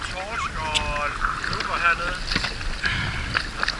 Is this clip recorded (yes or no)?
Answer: yes